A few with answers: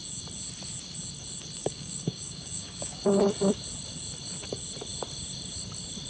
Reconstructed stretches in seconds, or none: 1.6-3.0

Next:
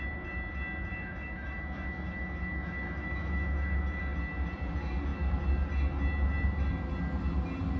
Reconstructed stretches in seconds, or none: 0.9-4.0

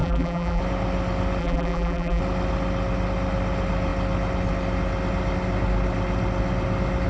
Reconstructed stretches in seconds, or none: 0.0-0.6; 1.4-2.2

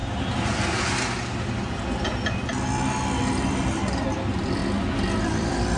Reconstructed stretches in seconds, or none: 3.5-4.6; 5.2-5.8